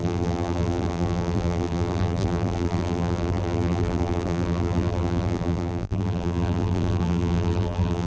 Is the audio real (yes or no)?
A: no